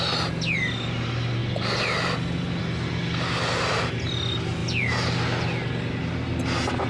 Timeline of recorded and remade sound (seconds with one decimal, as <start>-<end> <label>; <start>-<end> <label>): 0.0-1.4 recorded; 1.4-2.6 remade; 2.6-6.9 recorded